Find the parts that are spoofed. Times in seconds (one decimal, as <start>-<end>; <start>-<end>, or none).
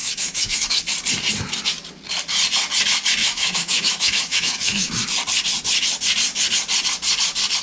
0.0-0.8; 3.2-4.9